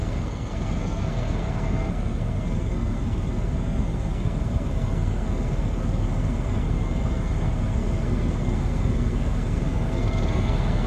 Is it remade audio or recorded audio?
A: remade